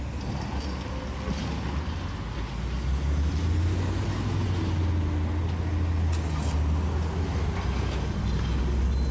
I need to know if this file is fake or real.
real